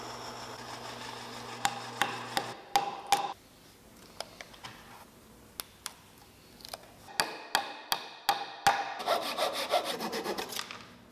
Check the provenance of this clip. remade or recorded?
recorded